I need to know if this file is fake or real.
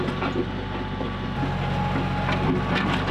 real